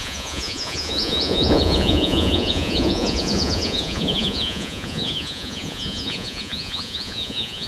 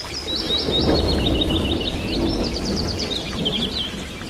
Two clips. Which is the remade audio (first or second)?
first